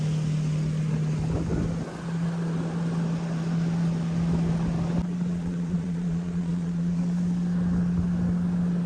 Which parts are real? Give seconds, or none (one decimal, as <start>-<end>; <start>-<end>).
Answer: 0.0-5.3; 7.0-8.9